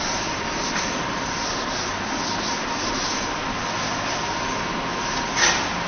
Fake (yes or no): no